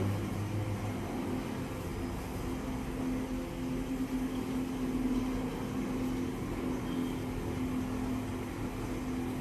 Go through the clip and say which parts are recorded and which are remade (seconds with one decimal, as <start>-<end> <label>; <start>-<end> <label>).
0.0-9.4 recorded